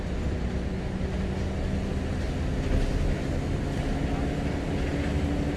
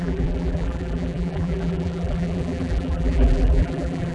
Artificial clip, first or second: second